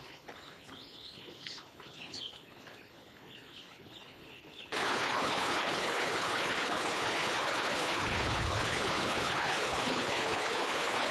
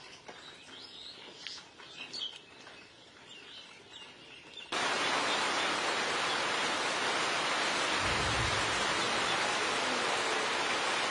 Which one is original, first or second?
second